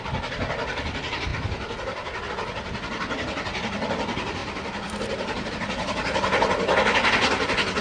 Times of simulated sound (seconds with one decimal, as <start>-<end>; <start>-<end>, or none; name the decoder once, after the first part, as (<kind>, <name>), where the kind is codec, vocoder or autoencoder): 4.4-5.5 (vocoder, BigVGAN v2)